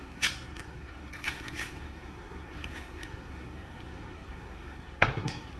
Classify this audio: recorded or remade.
remade